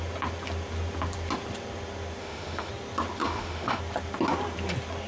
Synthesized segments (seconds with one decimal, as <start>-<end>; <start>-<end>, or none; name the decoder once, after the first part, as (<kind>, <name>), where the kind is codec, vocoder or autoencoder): 2.2-2.7 (autoencoder, DAC-VAE); 3.2-3.8